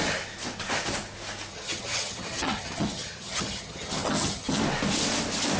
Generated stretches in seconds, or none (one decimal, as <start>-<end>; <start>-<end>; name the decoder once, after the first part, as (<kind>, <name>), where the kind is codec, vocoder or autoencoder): 1.5-4.6 (vocoder, HiFi-GAN)